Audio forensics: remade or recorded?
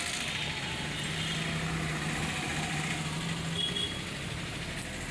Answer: recorded